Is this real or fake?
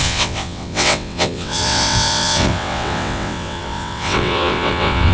fake